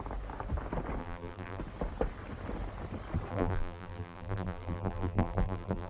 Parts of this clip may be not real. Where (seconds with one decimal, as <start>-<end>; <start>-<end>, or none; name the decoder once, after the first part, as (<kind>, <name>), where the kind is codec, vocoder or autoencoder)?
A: 1.0-1.6 (vocoder, BigVGAN v2); 3.3-5.9